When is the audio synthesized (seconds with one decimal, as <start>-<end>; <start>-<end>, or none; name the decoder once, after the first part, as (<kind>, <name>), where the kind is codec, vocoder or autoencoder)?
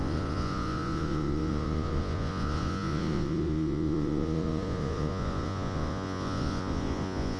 0.0-7.4 (vocoder, Vocos)